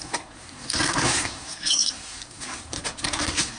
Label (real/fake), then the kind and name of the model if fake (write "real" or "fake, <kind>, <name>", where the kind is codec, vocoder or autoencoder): fake, codec, SNAC